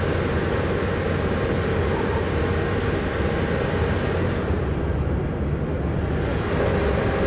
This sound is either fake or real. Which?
real